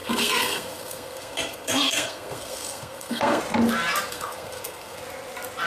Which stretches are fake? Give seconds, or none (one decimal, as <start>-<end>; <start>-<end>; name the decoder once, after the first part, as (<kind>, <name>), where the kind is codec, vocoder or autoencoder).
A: 0.0-3.4 (codec, SNAC); 4.1-5.0